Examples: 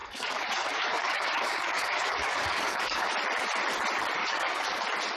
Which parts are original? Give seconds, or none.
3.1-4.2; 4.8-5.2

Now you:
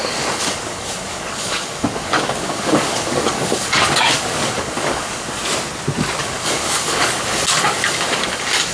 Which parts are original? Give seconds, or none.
5.4-6.2

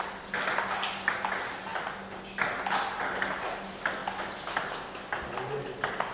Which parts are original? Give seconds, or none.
0.0-6.1

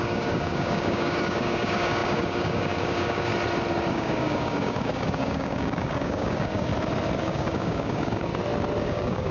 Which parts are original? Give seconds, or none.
3.3-3.9; 6.7-7.2; 8.3-8.8

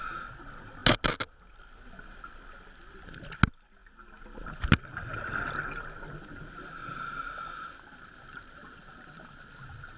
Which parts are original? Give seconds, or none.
0.0-10.0

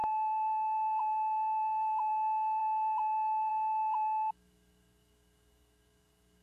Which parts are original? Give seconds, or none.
none

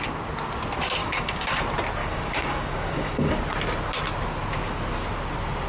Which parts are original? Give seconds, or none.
0.0-1.0; 1.6-2.0; 3.4-5.7

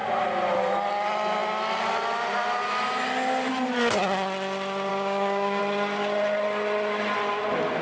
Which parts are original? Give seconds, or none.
0.0-4.9; 5.6-7.8